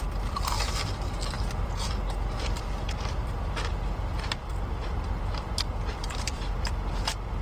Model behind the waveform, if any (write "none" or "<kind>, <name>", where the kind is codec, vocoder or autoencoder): vocoder, BigVGAN v2